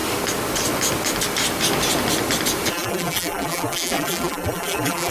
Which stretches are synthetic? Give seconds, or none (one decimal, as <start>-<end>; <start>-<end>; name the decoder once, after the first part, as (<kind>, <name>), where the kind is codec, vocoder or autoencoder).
2.7-5.1 (vocoder, BigVGAN v2)